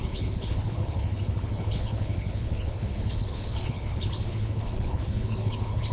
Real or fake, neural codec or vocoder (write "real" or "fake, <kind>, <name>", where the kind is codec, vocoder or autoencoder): fake, codec, HILCodec